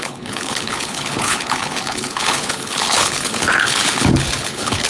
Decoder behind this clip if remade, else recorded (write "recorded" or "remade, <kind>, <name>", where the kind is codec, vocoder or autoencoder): remade, codec, HILCodec